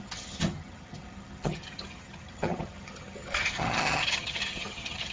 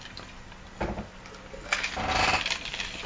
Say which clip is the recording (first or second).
second